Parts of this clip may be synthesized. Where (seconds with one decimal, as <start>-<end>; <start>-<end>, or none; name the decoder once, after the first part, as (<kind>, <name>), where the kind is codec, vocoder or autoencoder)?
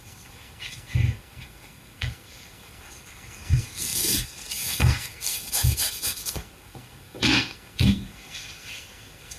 0.0-9.4 (codec, SNAC)